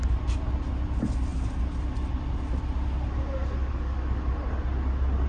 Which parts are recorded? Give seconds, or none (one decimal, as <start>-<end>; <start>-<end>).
0.0-3.6; 4.2-5.3